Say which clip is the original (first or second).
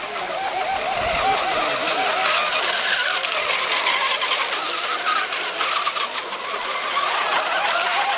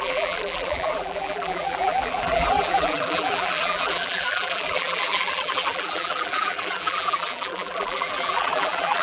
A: first